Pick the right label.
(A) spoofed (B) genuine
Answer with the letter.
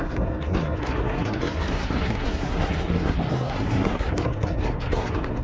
A